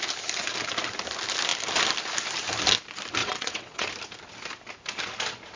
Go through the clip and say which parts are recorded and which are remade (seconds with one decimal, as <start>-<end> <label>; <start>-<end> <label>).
0.0-3.2 recorded; 3.2-3.9 remade; 3.9-5.6 recorded